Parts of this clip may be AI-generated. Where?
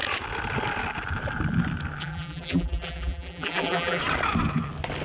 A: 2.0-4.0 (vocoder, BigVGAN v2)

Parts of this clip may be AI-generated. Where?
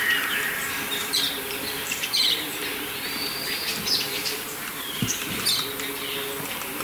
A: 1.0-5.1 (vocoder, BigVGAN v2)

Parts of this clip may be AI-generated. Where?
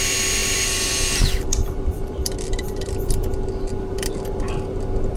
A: 0.4-3.3 (vocoder, BigVGAN v2); 3.9-4.7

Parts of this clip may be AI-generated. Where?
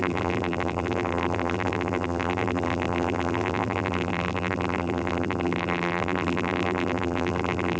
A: 0.0-7.8 (vocoder, BigVGAN v2)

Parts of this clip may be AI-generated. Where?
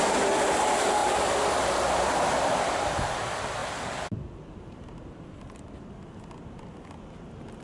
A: 1.0-2.7 (vocoder, BigVGAN v2); 3.6-4.9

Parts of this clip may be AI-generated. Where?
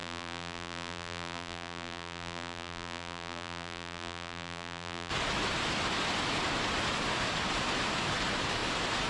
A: 0.0-5.1 (vocoder, BigVGAN v2)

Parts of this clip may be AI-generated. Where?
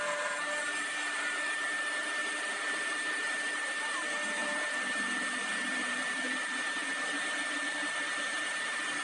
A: 0.0-9.0 (vocoder, BigVGAN v2)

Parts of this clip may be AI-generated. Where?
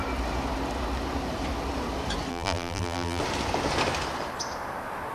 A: 2.3-3.2 (vocoder, BigVGAN v2)